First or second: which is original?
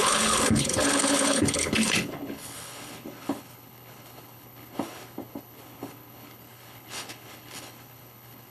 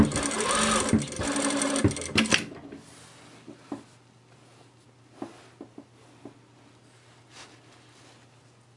second